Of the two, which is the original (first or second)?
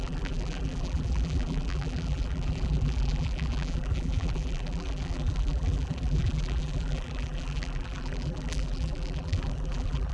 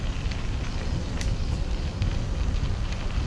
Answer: second